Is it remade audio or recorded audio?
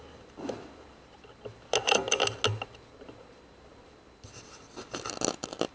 recorded